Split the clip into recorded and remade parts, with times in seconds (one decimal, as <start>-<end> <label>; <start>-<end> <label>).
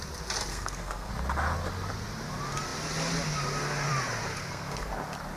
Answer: 0.0-0.5 recorded; 0.5-1.1 remade; 1.1-4.4 recorded; 4.4-4.9 remade; 4.9-5.4 recorded